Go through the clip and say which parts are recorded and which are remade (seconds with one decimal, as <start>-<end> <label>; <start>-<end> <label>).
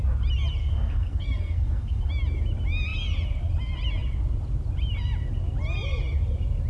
0.0-0.6 recorded; 0.6-2.1 remade; 2.1-6.7 recorded